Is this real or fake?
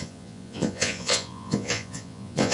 fake